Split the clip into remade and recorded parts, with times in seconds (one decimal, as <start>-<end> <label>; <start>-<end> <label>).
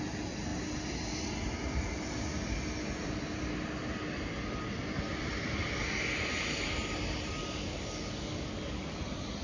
0.0-7.4 recorded; 7.4-9.0 remade; 9.0-9.4 recorded